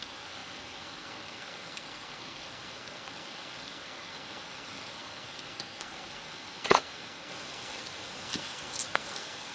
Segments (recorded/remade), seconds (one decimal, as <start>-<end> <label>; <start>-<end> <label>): 0.0-9.5 remade